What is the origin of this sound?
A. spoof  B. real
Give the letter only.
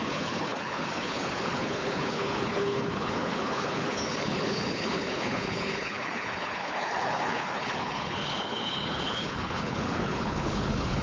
A